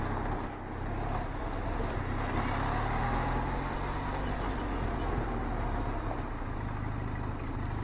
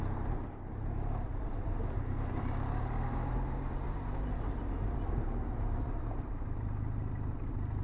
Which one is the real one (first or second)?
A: first